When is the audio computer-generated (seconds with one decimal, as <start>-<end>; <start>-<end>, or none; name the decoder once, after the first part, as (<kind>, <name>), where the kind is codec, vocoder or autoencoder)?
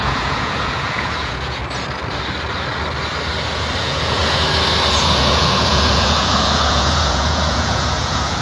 0.0-1.6 (vocoder, Vocos); 3.8-4.2; 4.9-8.4